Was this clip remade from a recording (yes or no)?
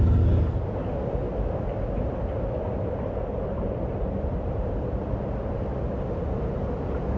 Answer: no